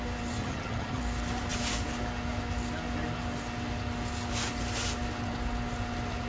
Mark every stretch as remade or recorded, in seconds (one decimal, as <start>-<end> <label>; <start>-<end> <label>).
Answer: 0.0-0.4 recorded; 0.4-1.0 remade; 1.0-6.3 recorded